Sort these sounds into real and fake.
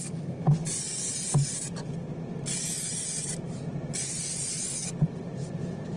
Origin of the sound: real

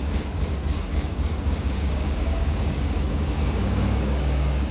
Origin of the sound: fake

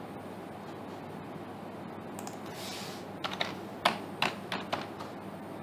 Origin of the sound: real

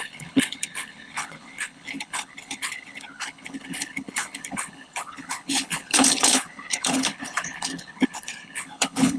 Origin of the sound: fake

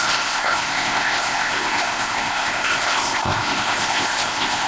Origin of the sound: fake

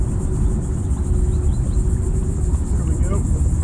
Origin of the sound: real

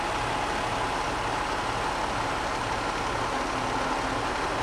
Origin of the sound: real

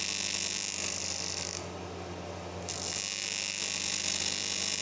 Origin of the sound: real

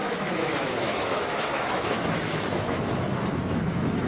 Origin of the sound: fake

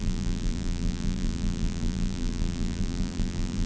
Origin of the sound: fake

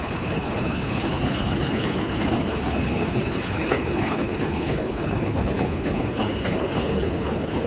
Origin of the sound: fake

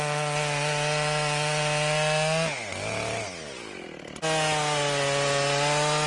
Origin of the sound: real